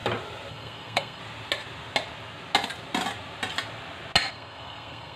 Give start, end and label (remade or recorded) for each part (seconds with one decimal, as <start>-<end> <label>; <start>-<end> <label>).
0.0-0.5 recorded; 0.5-1.2 remade; 1.2-4.3 recorded; 4.3-5.2 remade